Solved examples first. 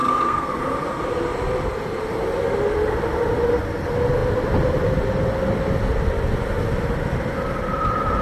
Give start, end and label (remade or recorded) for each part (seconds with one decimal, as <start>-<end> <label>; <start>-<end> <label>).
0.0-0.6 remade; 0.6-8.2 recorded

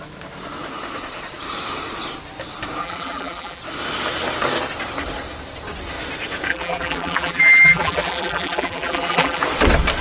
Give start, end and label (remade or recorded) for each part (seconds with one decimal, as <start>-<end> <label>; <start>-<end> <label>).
0.0-2.8 recorded; 2.8-3.6 remade; 3.6-6.5 recorded; 6.5-9.4 remade; 9.4-10.0 recorded

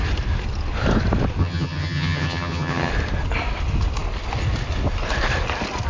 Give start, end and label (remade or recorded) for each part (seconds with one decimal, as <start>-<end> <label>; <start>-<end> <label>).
0.0-1.4 recorded; 1.4-2.9 remade; 2.9-5.9 recorded

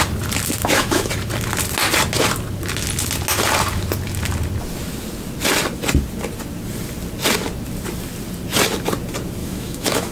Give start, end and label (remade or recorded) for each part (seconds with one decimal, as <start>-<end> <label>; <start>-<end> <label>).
0.0-0.6 recorded; 0.6-1.1 remade; 1.1-9.4 recorded; 9.4-10.1 remade

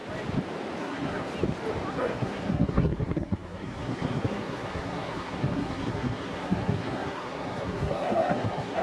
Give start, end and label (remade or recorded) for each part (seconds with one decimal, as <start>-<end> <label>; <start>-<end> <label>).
0.0-0.8 recorded; 0.8-1.3 remade; 1.3-1.9 recorded; 1.9-8.8 remade

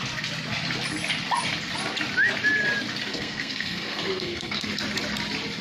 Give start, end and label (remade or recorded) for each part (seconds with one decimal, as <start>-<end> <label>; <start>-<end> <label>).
0.0-3.1 recorded; 3.1-4.7 remade; 4.7-5.6 recorded

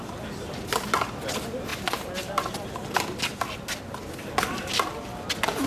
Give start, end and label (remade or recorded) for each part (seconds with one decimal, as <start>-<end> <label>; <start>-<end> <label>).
0.0-5.7 recorded

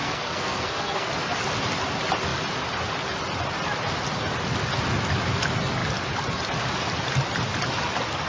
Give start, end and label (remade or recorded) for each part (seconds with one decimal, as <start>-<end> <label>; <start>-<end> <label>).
0.0-1.1 remade; 1.1-8.3 recorded